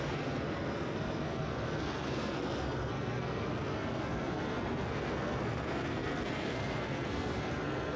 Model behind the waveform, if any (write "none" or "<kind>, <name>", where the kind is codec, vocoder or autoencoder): codec, SNAC